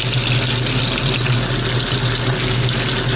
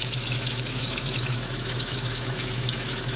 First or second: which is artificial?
second